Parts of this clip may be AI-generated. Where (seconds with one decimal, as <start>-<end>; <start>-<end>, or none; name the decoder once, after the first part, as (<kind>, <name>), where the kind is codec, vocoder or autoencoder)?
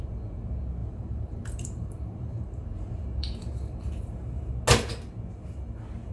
0.8-4.5 (vocoder, BigVGAN v2)